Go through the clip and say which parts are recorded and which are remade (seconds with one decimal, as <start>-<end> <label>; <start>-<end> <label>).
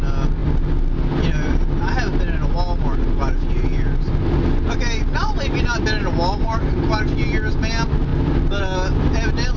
0.0-9.6 recorded